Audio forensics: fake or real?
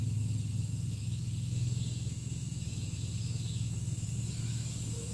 fake